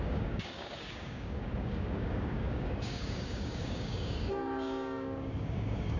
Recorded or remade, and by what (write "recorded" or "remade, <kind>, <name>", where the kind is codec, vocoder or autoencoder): remade, codec, DAC